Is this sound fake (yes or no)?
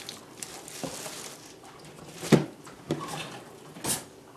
no